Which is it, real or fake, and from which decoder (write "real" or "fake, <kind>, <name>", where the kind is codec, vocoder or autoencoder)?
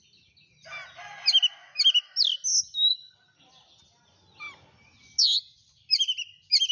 real